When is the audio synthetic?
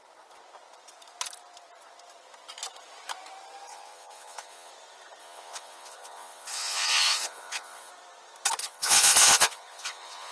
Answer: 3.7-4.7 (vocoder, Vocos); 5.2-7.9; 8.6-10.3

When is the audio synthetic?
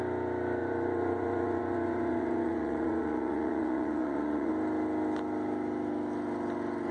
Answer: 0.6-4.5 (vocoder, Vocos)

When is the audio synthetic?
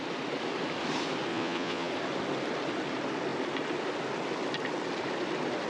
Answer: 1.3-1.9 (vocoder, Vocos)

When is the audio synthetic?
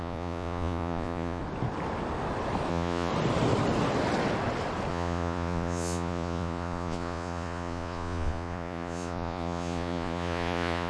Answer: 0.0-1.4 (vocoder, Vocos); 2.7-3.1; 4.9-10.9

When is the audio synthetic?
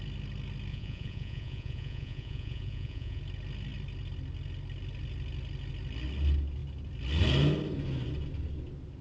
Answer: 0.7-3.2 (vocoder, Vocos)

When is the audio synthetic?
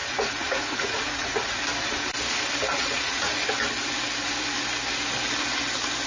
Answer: 0.0-1.6 (vocoder, Vocos); 2.7-3.4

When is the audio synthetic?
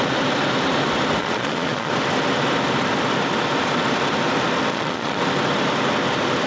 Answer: 1.2-1.9 (vocoder, Vocos); 4.7-5.2